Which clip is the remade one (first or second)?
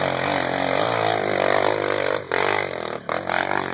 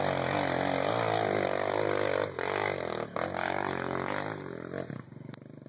first